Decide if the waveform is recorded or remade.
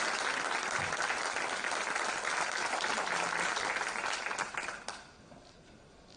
recorded